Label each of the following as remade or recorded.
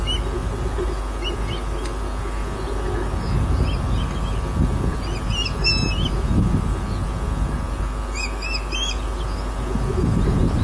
recorded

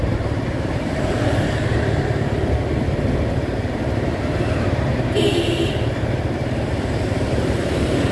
remade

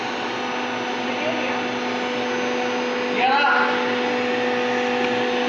recorded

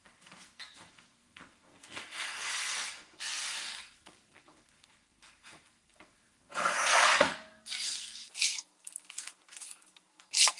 remade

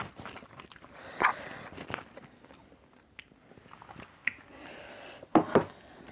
recorded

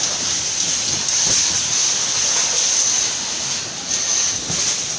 recorded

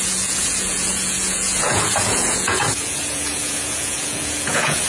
remade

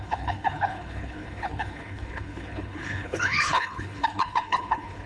remade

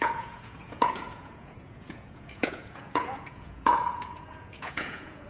remade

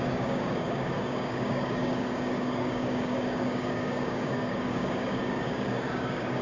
remade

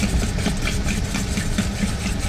remade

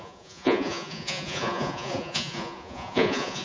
remade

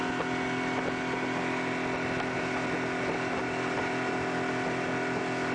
recorded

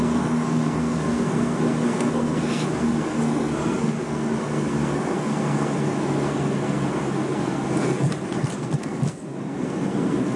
remade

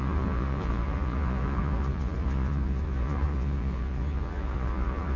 remade